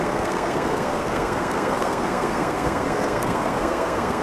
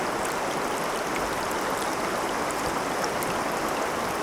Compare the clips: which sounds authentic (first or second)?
second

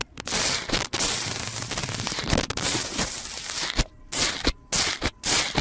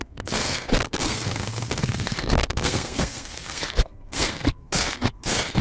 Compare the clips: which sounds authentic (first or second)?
first